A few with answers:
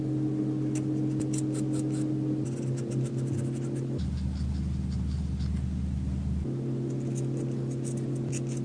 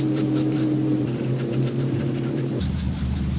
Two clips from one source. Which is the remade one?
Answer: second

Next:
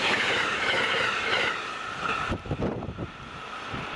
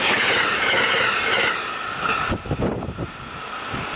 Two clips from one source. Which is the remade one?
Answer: first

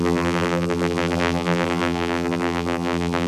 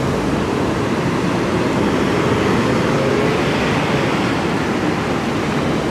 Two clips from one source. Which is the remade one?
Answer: first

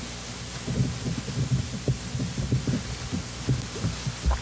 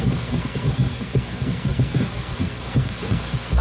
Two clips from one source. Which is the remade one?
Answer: second